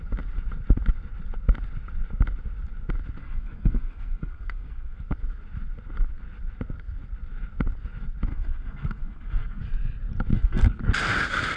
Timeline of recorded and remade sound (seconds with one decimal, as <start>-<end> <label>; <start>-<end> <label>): 0.0-3.2 recorded; 3.2-5.0 remade; 5.0-8.3 recorded; 8.3-9.6 remade; 9.6-10.3 recorded; 10.3-10.8 remade; 10.8-11.6 recorded